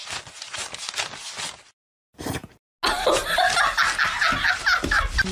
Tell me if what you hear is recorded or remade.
recorded